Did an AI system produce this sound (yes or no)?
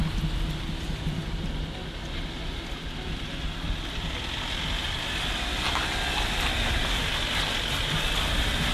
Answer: no